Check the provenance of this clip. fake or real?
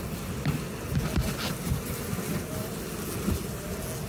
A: real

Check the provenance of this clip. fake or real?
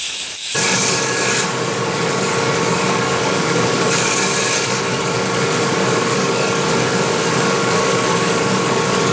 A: fake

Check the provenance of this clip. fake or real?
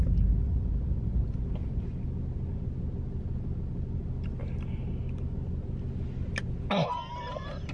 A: real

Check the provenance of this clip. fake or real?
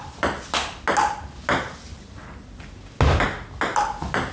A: real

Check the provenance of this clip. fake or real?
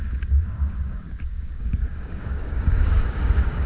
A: fake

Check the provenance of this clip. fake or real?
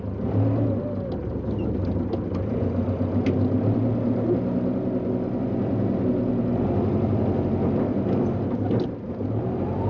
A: real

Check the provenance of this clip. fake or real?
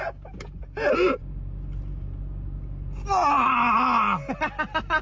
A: real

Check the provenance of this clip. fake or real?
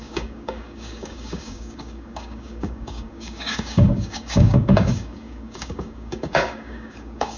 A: fake